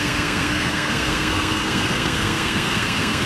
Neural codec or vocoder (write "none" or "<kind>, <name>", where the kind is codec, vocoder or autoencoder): codec, SNAC